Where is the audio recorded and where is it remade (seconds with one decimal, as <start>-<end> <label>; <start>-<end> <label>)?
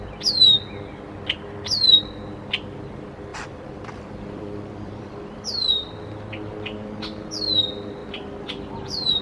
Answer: 0.0-3.3 recorded; 3.3-5.9 remade; 5.9-8.0 recorded; 8.0-9.2 remade